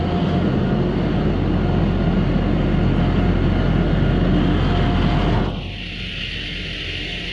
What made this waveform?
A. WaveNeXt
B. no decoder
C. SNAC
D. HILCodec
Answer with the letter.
B